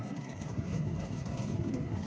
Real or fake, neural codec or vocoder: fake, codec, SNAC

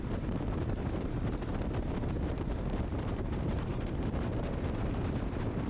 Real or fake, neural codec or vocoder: fake, vocoder, BigVGAN v2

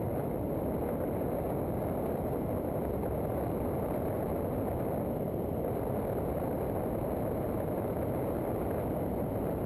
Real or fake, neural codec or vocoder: real